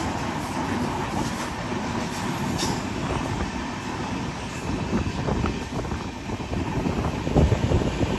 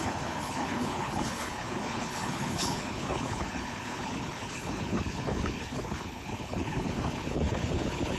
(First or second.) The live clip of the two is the first